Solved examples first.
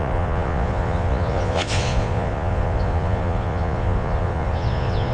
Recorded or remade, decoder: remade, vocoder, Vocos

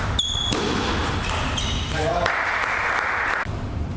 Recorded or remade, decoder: recorded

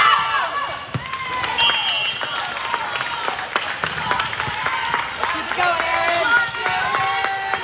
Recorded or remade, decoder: recorded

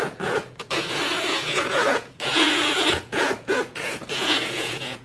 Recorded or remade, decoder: remade, vocoder, Vocos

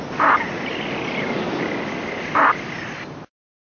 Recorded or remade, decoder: recorded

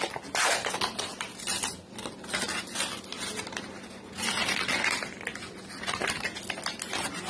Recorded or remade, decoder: recorded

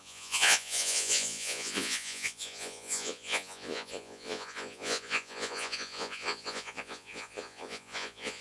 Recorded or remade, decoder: remade, vocoder, Vocos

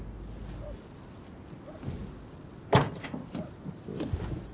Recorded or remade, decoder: recorded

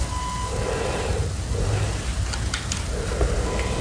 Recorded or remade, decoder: recorded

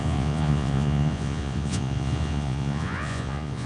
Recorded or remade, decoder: remade, vocoder, Vocos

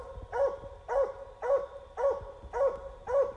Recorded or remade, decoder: recorded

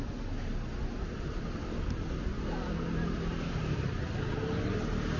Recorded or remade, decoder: recorded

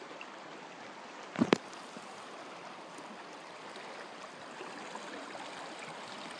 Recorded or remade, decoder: recorded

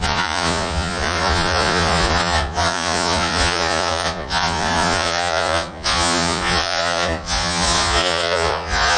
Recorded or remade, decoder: remade, vocoder, Vocos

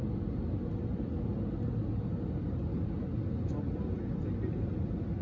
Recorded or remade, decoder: recorded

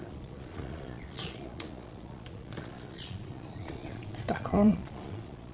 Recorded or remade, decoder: remade, vocoder, Vocos